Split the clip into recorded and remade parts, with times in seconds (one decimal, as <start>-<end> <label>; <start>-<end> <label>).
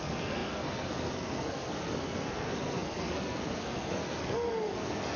0.0-5.2 remade